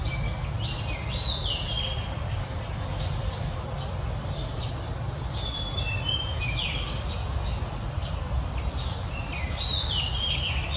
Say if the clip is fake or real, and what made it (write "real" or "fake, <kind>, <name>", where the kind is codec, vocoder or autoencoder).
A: real